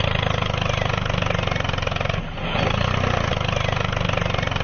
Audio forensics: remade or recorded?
recorded